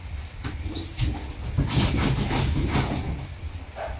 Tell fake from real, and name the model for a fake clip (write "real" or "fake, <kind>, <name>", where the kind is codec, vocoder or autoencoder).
real